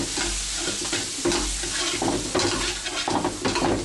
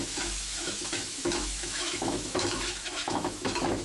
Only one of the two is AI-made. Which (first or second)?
second